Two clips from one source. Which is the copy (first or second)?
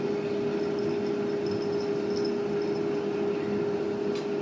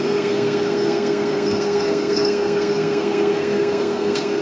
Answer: second